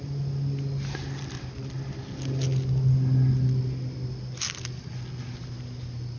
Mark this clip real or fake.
real